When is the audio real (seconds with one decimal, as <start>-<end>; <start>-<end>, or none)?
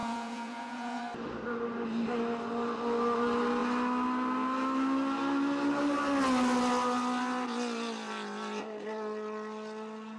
1.0-10.2